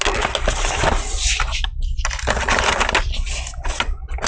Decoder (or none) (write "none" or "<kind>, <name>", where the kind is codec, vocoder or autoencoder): none